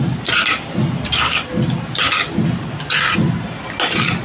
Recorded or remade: recorded